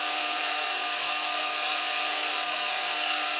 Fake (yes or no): yes